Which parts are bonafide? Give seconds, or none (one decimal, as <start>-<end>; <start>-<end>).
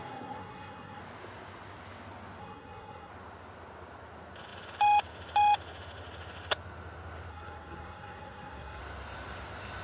1.0-2.4; 3.1-7.3; 8.8-9.8